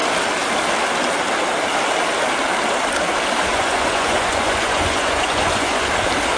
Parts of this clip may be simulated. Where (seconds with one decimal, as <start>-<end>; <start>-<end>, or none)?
3.5-5.9